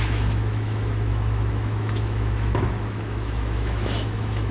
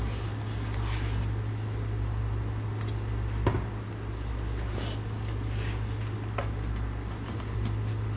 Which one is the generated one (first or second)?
first